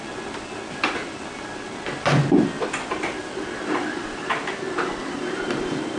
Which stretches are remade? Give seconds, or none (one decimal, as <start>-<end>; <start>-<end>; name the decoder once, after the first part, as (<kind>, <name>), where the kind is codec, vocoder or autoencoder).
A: 3.6-6.0 (vocoder, BigVGAN v2)